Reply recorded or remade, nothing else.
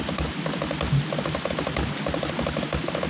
recorded